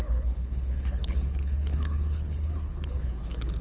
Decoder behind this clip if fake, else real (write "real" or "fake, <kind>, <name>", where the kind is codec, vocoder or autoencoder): fake, codec, HILCodec